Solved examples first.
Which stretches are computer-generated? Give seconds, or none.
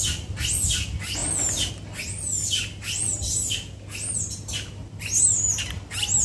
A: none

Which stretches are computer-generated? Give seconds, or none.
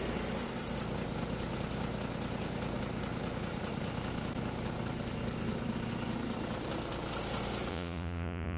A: 7.7-8.6 (vocoder, Vocos)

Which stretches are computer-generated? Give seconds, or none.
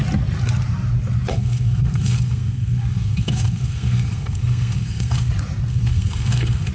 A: 1.3-5.3 (codec, SNAC); 5.7-6.7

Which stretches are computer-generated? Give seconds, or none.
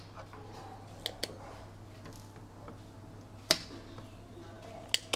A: none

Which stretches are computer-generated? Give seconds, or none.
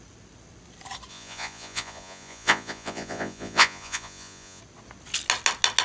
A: 1.1-4.6 (vocoder, Vocos)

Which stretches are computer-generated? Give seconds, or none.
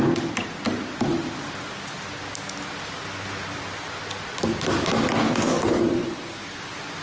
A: 5.2-5.8 (codec, DAC)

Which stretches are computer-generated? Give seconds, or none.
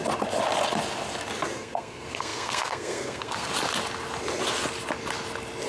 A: 1.5-3.5 (codec, SNAC)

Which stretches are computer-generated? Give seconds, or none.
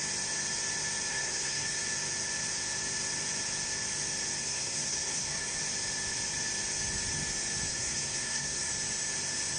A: 1.1-1.8 (codec, SNAC); 4.4-5.6; 7.7-8.7